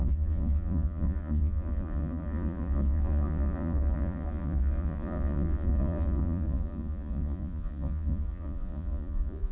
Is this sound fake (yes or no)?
yes